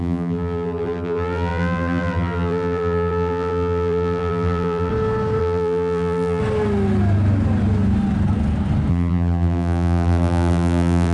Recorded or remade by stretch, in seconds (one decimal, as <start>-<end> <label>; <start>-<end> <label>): 0.0-4.9 remade; 4.9-5.4 recorded; 5.4-6.4 remade; 6.4-8.9 recorded; 8.9-11.1 remade

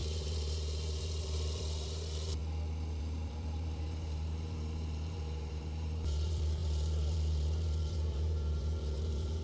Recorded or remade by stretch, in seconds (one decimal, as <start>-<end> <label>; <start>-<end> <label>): 0.0-2.4 remade; 2.4-3.0 recorded; 3.0-9.4 remade

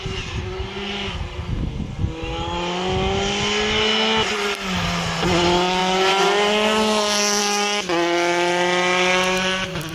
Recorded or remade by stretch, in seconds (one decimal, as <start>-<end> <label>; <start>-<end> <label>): 0.0-9.9 recorded